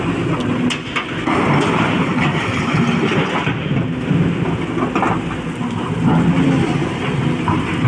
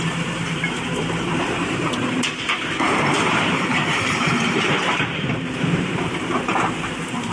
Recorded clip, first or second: first